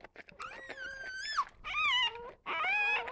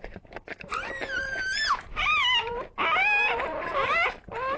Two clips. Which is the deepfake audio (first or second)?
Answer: second